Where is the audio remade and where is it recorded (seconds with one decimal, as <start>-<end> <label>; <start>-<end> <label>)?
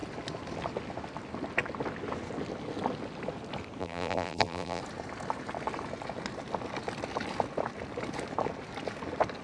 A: 0.0-3.8 recorded; 3.8-4.8 remade; 4.8-9.4 recorded